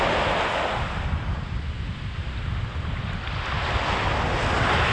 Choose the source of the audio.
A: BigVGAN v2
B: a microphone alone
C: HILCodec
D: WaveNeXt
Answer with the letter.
B